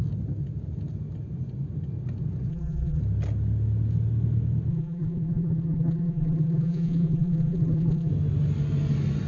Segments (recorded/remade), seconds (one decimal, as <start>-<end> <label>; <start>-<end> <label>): 0.0-2.5 recorded; 2.5-3.0 remade; 3.0-4.7 recorded; 4.7-8.1 remade; 8.1-9.3 recorded